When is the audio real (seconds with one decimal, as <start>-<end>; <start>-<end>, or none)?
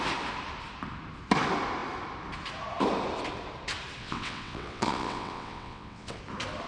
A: 0.0-4.0; 6.2-6.7